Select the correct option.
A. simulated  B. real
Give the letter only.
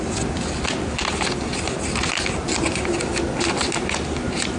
B